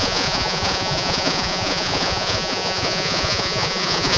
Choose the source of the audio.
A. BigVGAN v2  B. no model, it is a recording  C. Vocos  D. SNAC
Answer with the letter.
C